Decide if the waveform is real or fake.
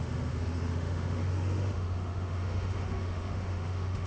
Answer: fake